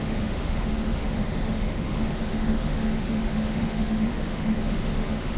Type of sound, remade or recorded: remade